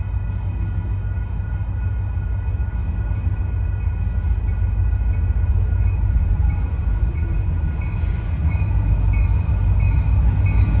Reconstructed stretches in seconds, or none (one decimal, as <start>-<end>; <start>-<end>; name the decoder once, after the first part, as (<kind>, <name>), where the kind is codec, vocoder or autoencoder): 5.5-8.5 (vocoder, Vocos)